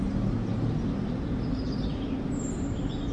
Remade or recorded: recorded